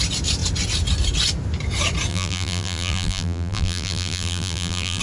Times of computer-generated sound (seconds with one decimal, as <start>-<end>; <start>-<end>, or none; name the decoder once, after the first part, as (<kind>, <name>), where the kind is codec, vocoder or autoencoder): 2.1-5.0 (vocoder, BigVGAN v2)